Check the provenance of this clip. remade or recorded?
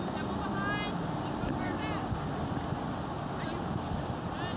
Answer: recorded